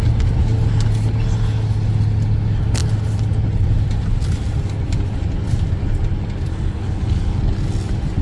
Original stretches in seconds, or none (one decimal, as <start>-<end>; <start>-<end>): 0.0-6.5; 7.4-8.2